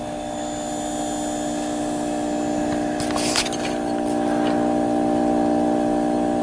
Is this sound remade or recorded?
recorded